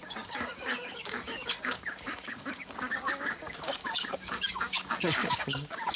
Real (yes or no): no